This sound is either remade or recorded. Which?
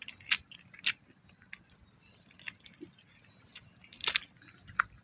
recorded